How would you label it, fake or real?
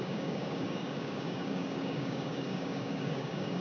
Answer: fake